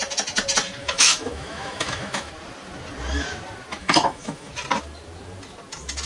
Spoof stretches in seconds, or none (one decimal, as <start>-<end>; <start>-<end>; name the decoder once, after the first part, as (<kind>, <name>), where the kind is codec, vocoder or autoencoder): 0.8-2.3 (autoencoder, DAC-VAE); 3.8-4.5